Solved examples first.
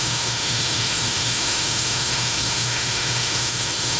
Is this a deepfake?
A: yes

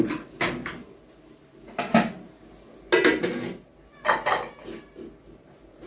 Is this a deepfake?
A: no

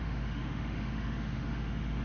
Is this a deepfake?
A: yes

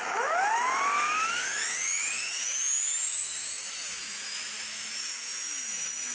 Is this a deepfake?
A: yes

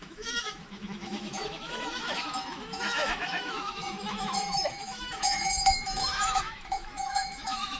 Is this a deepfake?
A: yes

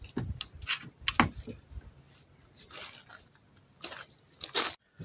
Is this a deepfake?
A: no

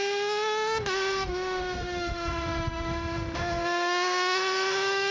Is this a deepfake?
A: yes